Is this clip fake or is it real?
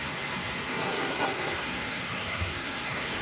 fake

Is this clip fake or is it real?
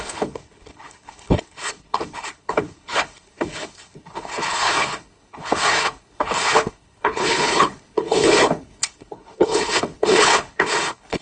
fake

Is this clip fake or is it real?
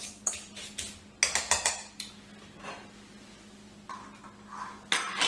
real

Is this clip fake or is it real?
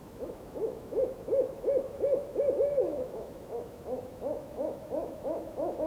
fake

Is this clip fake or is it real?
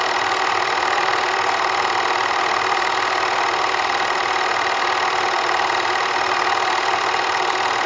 real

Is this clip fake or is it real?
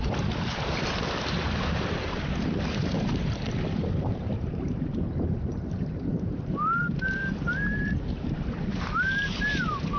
fake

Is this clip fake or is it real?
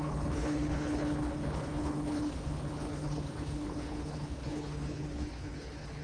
fake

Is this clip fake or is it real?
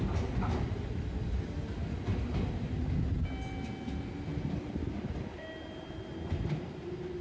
real